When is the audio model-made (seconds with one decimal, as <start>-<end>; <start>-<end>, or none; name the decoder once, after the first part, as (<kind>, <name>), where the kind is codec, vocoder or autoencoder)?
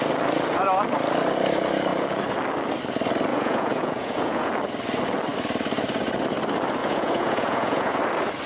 3.3-4.5 (vocoder, Vocos); 6.8-8.0